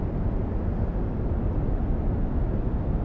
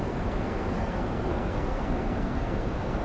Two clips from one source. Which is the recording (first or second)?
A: first